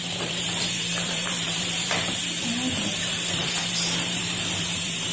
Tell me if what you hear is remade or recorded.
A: remade